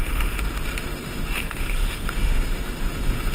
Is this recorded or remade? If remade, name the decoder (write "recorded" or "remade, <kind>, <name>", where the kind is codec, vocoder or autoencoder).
remade, autoencoder, DAC-VAE